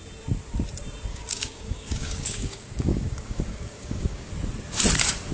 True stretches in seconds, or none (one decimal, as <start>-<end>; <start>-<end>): 0.0-1.1; 4.3-5.3